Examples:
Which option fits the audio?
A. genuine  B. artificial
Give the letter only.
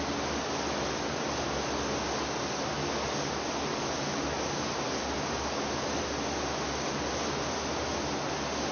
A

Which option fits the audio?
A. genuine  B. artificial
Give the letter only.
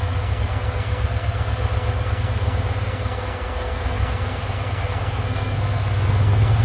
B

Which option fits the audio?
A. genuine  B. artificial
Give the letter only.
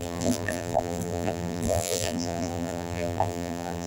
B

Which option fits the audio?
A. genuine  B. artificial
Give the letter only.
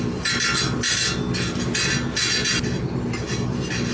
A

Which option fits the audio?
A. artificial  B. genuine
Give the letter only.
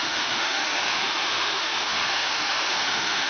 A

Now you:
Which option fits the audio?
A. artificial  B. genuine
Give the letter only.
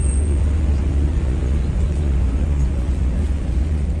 A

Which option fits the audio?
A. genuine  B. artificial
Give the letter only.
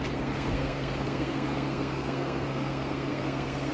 B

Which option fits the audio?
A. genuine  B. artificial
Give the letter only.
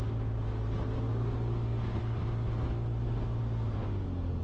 A